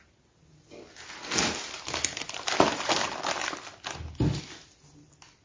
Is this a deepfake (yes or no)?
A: no